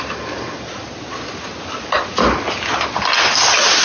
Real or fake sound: real